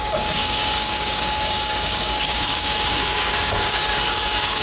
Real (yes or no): no